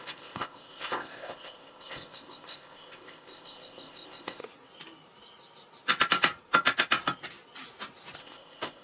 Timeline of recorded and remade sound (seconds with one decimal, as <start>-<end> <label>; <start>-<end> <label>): 0.0-4.4 remade; 4.4-8.2 recorded; 8.2-8.8 remade